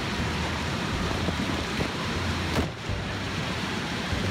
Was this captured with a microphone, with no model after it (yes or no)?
no